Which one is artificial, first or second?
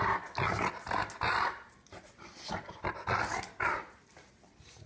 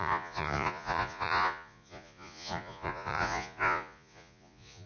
second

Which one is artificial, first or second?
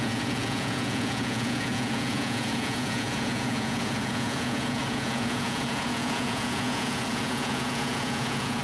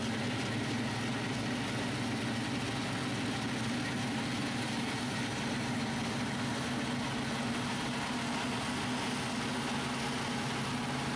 first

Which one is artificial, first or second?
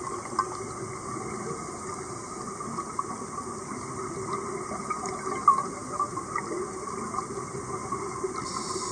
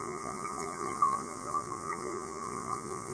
second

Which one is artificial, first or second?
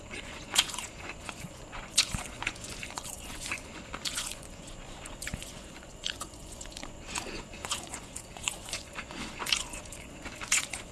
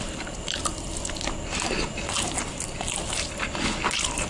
first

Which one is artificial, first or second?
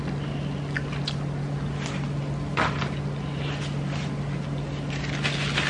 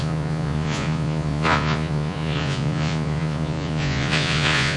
second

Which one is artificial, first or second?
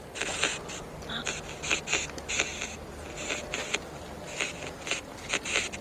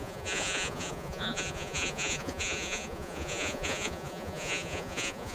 second